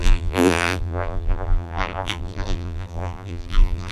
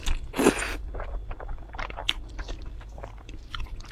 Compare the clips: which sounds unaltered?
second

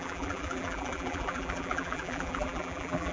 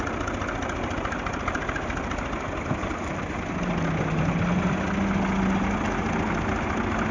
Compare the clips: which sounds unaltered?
second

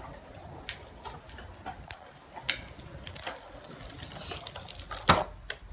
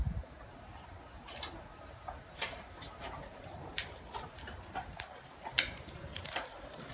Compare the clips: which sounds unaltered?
first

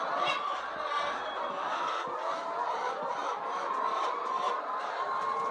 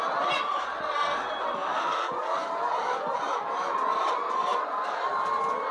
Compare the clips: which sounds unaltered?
second